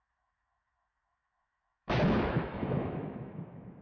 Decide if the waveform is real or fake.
fake